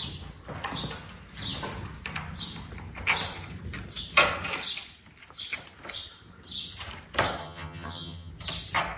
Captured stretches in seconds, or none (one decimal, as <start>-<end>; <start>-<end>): 0.0-7.4; 8.3-9.0